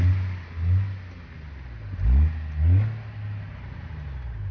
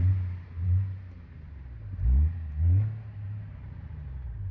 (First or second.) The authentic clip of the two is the first